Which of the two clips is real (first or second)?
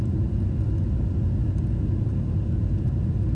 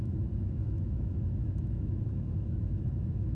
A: first